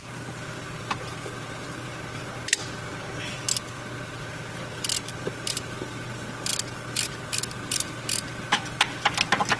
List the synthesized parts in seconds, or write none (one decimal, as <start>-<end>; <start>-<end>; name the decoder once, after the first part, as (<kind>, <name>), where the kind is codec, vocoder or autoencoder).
0.0-2.9 (vocoder, BigVGAN v2); 5.2-6.5; 7.2-9.6

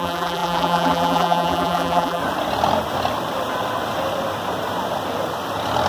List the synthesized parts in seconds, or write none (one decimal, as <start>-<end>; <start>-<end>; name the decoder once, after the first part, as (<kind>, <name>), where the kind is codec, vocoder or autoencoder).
0.0-2.2 (vocoder, BigVGAN v2)

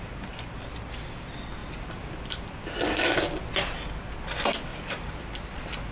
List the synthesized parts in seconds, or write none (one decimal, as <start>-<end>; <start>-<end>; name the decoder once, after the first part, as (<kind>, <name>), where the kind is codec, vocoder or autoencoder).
1.6-2.7 (vocoder, BigVGAN v2); 4.7-5.2